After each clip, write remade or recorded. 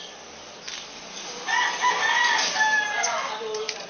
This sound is recorded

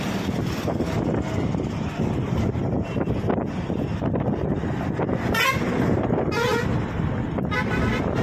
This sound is recorded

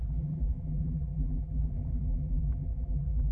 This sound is remade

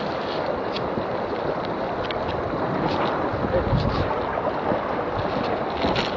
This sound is recorded